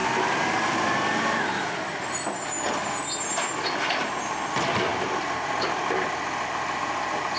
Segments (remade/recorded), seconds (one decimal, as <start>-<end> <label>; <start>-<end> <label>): 0.0-7.4 recorded